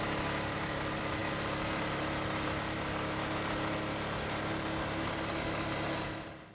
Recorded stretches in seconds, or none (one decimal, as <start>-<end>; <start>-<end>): 0.0-6.5